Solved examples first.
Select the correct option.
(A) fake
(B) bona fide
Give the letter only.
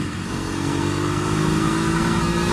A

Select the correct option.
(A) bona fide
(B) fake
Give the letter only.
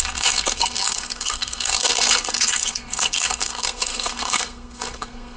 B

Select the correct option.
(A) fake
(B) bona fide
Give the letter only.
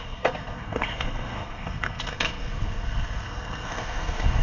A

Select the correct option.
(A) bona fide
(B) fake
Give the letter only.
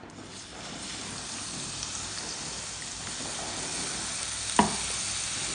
A